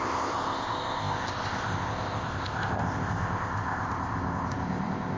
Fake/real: fake